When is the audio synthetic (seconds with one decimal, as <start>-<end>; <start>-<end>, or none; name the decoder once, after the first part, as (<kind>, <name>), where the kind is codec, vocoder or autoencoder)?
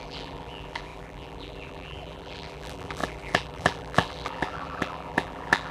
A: 0.0-5.7 (vocoder, BigVGAN v2)